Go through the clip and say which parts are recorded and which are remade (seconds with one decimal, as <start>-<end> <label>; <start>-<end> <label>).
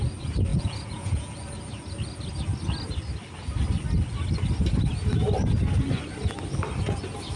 0.0-0.5 recorded; 0.5-1.3 remade; 1.3-7.4 recorded